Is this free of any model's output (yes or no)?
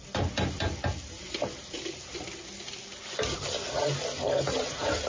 yes